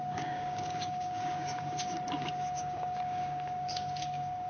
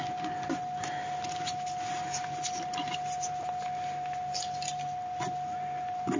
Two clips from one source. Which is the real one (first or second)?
second